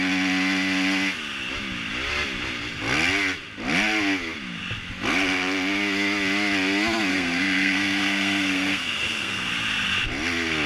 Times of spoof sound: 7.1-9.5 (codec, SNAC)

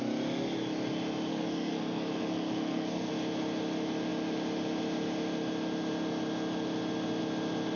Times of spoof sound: 1.3-3.1 (codec, SNAC)

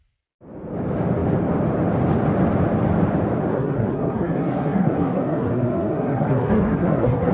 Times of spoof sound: 3.5-7.3 (codec, SNAC)

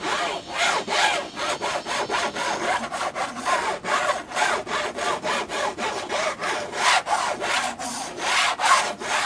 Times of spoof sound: none

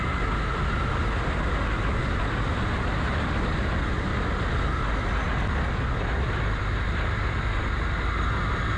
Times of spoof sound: none